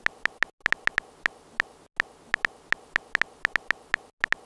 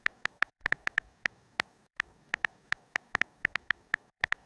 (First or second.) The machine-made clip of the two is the second